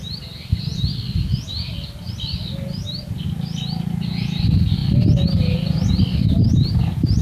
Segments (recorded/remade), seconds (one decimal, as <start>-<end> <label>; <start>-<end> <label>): 0.0-7.2 recorded